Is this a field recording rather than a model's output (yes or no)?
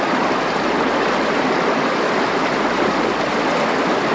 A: yes